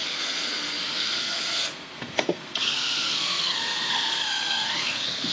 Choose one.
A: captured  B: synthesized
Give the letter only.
B